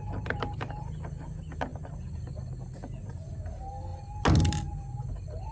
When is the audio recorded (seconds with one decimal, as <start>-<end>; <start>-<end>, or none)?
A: 0.0-5.5